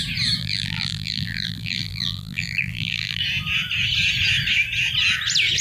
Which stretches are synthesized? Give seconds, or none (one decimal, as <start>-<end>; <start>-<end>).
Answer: 0.4-3.2

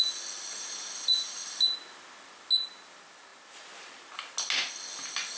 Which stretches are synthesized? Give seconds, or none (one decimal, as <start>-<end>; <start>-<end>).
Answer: none